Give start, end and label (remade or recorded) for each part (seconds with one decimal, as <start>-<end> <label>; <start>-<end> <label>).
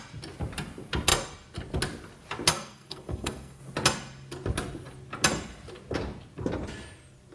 0.0-2.5 recorded; 2.5-3.6 remade; 3.6-7.3 recorded